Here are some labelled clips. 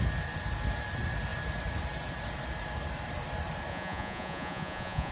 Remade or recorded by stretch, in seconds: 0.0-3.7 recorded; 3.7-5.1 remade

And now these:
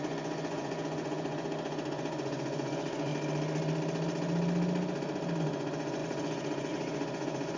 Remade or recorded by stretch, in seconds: 0.0-3.1 remade; 3.1-5.4 recorded; 5.4-7.6 remade

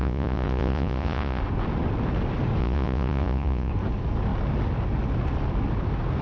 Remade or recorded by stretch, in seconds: 0.0-1.4 remade; 1.4-2.6 recorded; 2.6-3.7 remade; 3.7-6.2 recorded